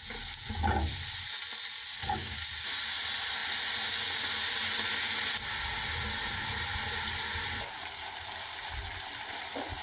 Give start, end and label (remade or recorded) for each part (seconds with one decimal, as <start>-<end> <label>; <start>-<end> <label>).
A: 0.0-1.9 recorded; 1.9-2.5 remade; 2.5-9.8 recorded